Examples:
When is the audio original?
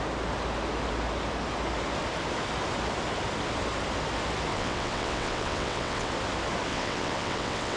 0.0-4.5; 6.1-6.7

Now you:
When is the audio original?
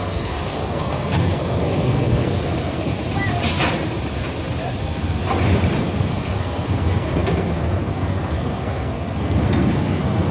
2.9-4.8; 5.2-5.8